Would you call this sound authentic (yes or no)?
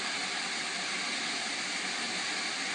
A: yes